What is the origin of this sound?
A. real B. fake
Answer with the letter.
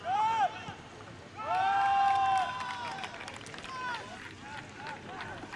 A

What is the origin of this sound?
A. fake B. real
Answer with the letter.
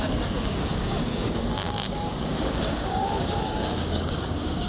A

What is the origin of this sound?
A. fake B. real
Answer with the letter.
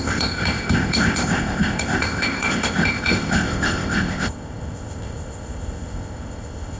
A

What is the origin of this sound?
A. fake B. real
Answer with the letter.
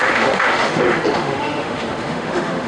A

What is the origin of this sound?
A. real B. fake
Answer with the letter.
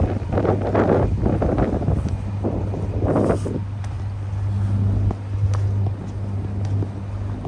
A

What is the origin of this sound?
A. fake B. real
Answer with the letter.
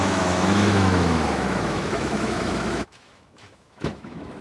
A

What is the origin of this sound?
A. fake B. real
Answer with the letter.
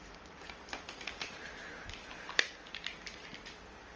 B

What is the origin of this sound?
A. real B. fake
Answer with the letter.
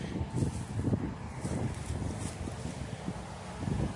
A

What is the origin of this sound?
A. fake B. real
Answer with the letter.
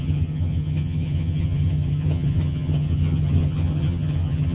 A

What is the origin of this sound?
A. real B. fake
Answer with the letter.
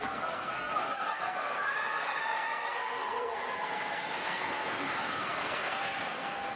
B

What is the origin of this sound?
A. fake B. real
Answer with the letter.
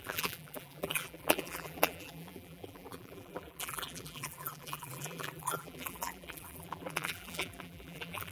A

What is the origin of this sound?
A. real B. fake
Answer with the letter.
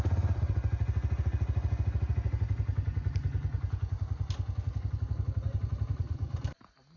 A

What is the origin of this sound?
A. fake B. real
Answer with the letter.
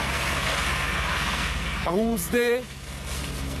A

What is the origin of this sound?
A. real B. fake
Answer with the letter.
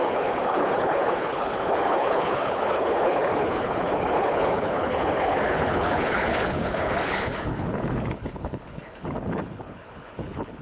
B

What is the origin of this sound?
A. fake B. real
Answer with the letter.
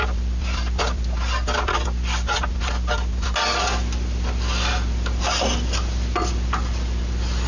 B